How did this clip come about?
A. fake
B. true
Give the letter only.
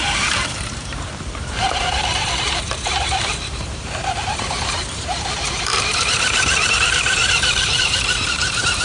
A